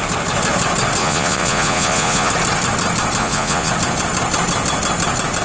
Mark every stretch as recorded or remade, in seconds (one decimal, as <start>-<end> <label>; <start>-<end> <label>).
0.0-1.0 recorded; 1.0-2.3 remade; 2.3-3.2 recorded; 3.2-3.7 remade; 3.7-5.4 recorded